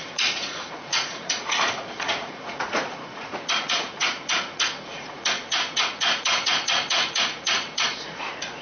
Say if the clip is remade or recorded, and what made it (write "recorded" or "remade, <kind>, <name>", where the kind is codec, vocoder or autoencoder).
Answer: remade, vocoder, Vocos